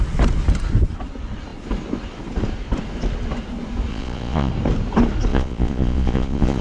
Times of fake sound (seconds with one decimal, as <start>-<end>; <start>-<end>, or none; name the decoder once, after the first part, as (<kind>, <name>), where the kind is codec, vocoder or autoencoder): 3.9-4.5 (vocoder, Vocos); 5.3-6.6